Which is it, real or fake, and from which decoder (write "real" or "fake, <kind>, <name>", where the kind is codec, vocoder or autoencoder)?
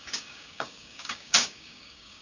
fake, codec, DAC